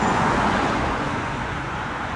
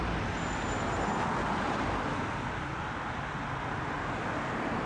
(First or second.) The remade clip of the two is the first